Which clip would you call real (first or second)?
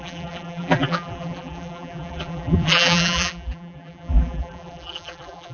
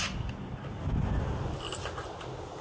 second